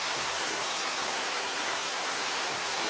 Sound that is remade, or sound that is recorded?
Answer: remade